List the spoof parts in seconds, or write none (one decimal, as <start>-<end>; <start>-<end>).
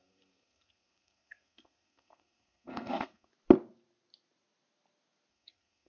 0.0-3.3; 5.3-5.9